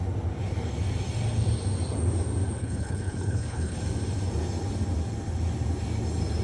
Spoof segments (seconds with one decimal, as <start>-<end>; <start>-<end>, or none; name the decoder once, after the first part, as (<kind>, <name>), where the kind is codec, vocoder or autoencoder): 2.6-3.8 (codec, HILCodec)